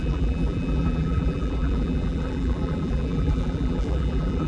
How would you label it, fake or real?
fake